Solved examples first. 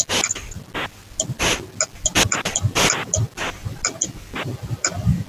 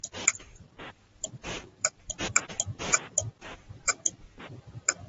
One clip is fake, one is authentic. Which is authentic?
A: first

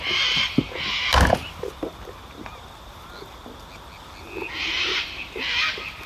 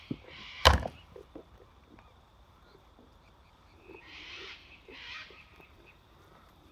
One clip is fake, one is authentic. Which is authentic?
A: first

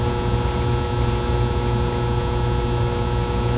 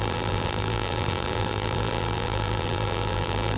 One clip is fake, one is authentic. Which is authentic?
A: first